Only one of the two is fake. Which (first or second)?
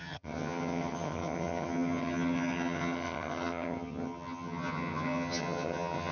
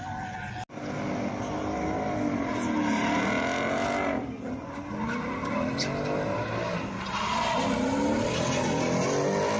first